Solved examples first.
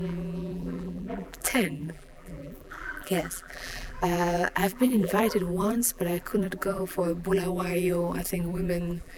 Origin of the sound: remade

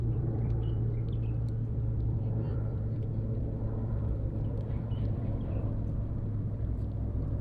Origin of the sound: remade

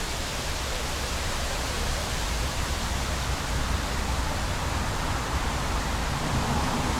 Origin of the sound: remade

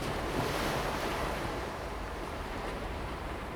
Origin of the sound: remade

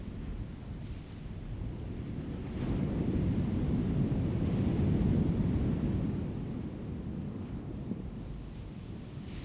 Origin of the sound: recorded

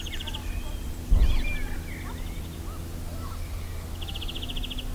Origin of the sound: recorded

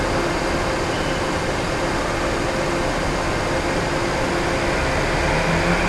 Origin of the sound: recorded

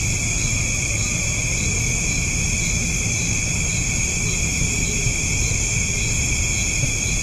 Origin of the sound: recorded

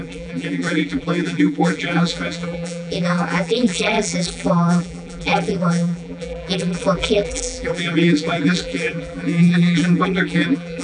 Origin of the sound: remade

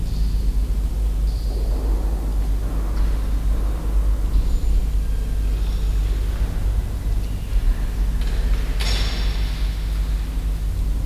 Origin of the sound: recorded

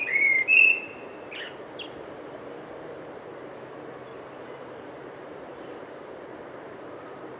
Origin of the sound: remade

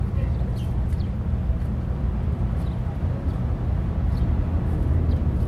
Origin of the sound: recorded